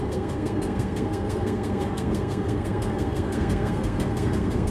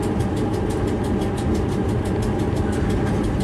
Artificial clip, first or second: first